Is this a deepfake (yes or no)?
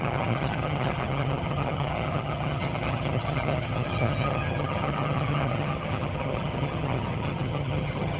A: yes